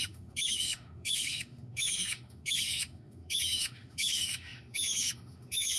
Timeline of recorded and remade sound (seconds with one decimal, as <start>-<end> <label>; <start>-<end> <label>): 0.0-5.8 remade